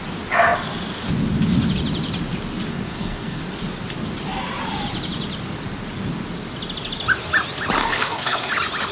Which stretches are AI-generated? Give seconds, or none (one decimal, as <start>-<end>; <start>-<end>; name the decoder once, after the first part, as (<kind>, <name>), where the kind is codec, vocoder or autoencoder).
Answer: 2.7-3.4 (codec, SNAC); 7.8-8.5